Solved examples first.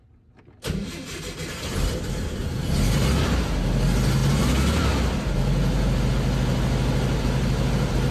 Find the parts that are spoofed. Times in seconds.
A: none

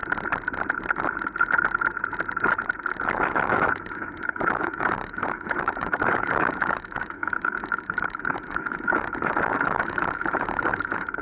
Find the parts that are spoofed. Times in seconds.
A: 3.1-11.2 (autoencoder, DAC-VAE)

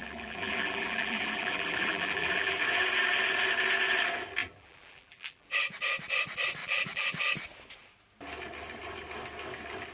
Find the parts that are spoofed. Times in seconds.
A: 0.0-2.6 (vocoder, BigVGAN v2); 4.4-5.5; 6.6-7.2

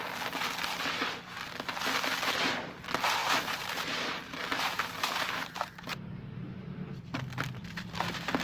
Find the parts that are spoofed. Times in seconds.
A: 3.2-6.9 (vocoder, BigVGAN v2)

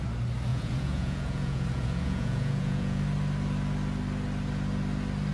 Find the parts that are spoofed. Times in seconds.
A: 0.5-3.0 (vocoder, Vocos)

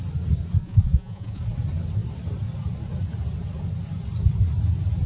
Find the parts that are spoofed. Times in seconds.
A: 0.6-1.4 (vocoder, Vocos)

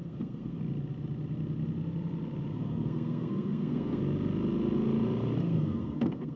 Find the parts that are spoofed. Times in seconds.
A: 0.0-0.6 (codec, SNAC); 2.5-4.0; 5.4-6.4